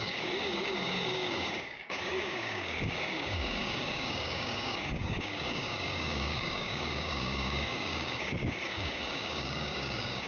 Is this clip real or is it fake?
fake